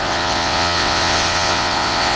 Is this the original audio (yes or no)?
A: no